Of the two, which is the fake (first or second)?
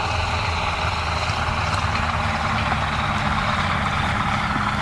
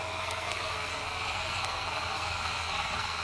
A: second